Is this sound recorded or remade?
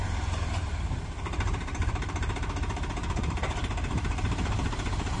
remade